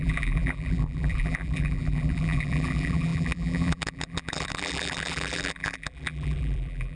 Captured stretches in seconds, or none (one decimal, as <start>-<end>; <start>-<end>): none